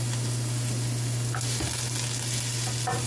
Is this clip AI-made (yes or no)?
no